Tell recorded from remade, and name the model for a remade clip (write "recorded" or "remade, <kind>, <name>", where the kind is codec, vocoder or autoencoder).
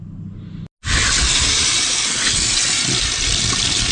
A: recorded